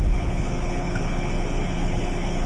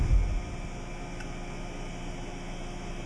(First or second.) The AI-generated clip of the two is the first